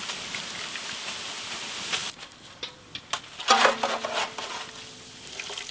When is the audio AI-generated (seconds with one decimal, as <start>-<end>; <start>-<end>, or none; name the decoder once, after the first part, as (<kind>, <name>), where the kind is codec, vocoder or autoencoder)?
2.0-2.9 (vocoder, BigVGAN v2)